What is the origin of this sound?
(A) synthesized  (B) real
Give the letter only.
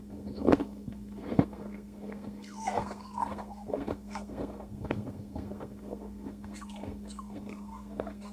A